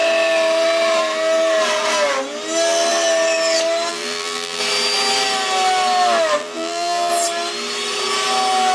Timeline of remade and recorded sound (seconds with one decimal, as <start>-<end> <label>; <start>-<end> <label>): 0.0-3.9 recorded; 3.9-4.6 remade; 4.6-6.4 recorded; 6.4-7.1 remade; 7.1-8.7 recorded